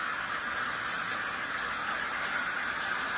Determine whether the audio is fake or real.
real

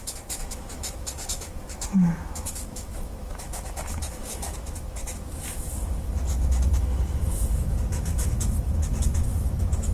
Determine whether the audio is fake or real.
fake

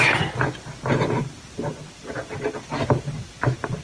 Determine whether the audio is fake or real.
real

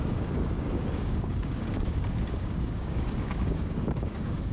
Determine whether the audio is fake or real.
fake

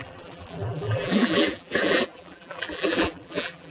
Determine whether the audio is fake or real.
fake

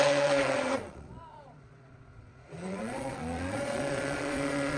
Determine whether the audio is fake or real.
fake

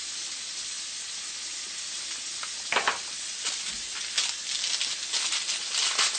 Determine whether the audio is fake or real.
real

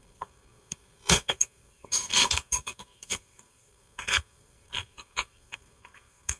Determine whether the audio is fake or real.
fake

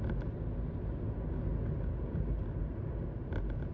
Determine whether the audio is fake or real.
real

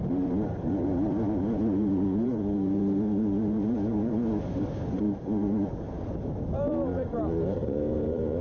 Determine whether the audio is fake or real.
fake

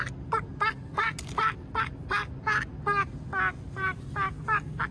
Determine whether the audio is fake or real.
real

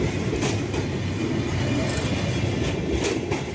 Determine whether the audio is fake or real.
real